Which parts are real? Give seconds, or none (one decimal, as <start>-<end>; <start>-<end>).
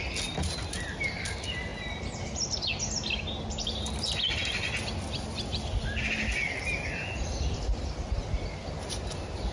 0.0-9.5